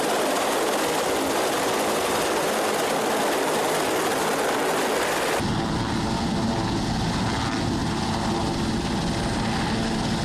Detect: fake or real real